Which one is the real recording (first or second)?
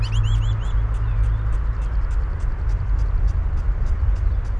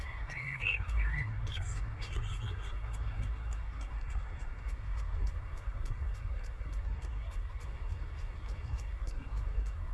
first